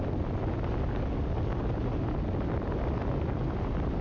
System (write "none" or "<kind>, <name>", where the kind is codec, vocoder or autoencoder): none